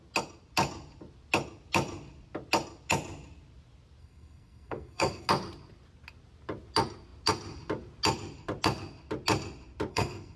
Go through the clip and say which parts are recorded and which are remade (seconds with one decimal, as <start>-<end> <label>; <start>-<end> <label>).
0.0-4.0 recorded; 4.0-5.3 remade; 5.3-9.9 recorded; 9.9-10.4 remade